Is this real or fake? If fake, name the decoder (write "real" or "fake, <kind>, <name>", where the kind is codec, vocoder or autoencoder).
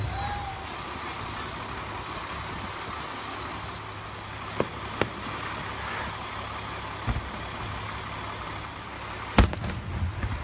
real